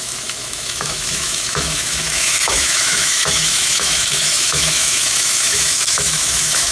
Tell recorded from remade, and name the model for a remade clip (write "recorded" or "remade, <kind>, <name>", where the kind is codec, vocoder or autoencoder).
remade, autoencoder, DAC-VAE